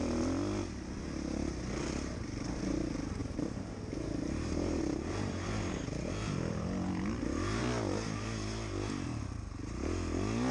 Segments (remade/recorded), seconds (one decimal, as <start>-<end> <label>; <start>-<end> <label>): 0.0-3.2 recorded; 3.2-4.8 remade; 4.8-10.5 recorded